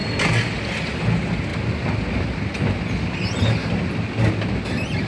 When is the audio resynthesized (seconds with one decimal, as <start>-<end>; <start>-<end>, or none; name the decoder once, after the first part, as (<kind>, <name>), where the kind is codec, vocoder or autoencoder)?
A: none